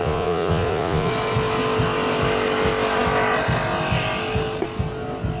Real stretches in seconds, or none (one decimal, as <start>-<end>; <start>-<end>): 1.1-5.4